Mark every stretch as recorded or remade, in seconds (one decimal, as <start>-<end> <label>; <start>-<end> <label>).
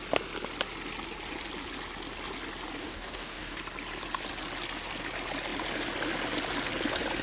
0.0-2.8 recorded; 2.8-3.6 remade; 3.6-7.2 recorded